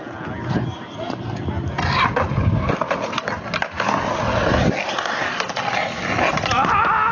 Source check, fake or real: real